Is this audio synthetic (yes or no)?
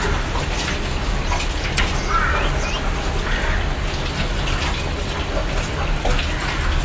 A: no